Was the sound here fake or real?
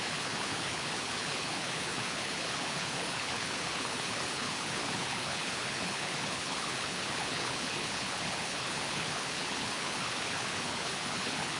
fake